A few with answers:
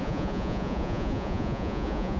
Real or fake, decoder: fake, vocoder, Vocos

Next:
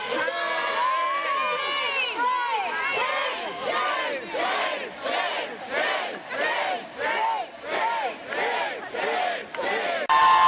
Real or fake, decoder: real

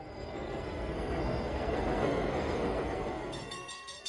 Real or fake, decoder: fake, codec, SNAC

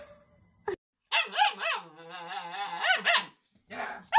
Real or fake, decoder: real